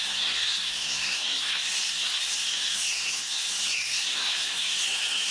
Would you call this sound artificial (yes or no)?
yes